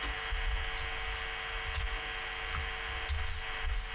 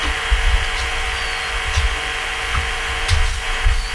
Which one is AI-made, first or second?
second